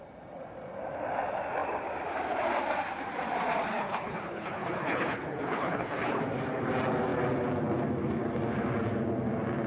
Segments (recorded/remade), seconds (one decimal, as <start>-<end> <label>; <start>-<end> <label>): 0.0-3.7 recorded; 3.7-6.2 remade; 6.2-9.7 recorded